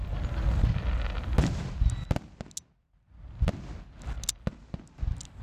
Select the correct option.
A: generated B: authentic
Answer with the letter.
B